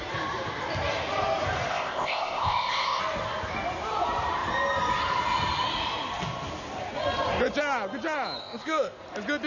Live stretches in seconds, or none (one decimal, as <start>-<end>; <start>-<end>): 0.0-1.7; 3.0-8.4; 9.0-9.5